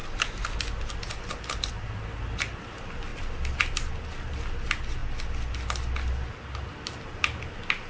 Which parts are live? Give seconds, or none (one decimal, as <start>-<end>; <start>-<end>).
0.0-7.9